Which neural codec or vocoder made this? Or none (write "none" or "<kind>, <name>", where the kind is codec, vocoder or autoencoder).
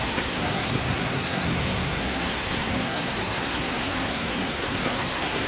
codec, SNAC